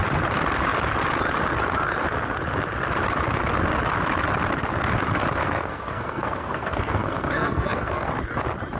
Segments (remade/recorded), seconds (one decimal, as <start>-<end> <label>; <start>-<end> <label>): 0.0-5.4 recorded; 5.4-8.1 remade; 8.1-8.8 recorded